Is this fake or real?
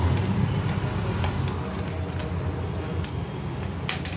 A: real